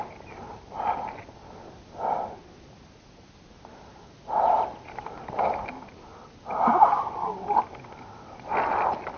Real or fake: real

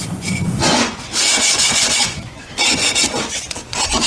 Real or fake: fake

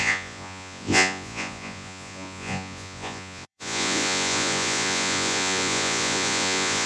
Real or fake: fake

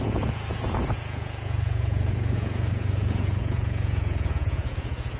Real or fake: fake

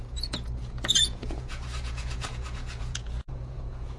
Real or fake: fake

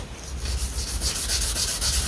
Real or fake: real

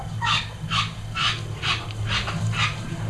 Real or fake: real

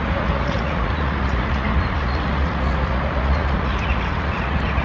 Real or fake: fake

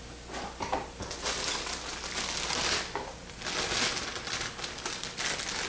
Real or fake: real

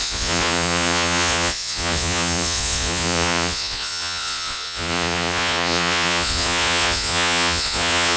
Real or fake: fake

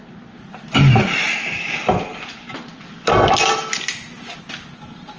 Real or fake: real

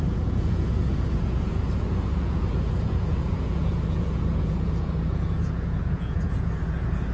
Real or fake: fake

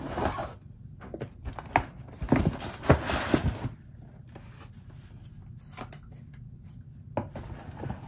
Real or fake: real